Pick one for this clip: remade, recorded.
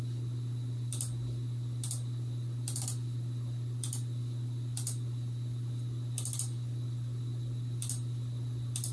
recorded